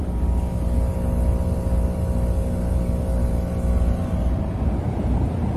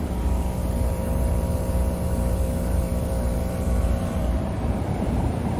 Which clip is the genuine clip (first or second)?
first